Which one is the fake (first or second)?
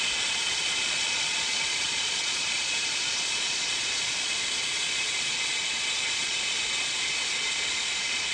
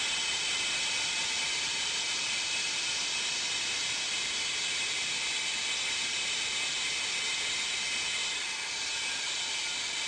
first